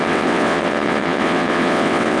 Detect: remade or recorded remade